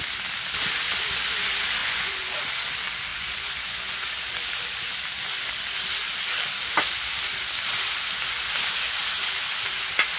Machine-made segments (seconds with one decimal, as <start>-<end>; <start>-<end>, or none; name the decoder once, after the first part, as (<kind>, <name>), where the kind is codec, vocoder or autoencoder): 1.8-2.4 (vocoder, Vocos); 3.1-4.1